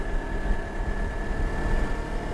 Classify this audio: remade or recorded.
recorded